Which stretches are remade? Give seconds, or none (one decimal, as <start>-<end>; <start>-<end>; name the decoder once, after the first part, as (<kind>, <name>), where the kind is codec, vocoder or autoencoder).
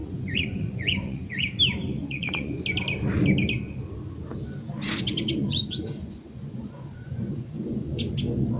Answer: 0.0-1.6 (vocoder, Vocos); 2.0-2.5; 5.4-8.1